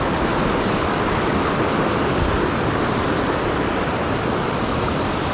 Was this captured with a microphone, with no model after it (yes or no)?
yes